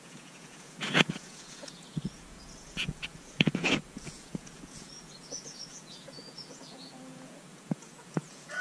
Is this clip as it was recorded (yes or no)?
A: no